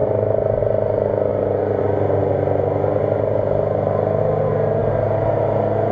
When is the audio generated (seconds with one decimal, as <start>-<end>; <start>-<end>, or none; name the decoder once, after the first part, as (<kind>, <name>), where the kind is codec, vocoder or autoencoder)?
none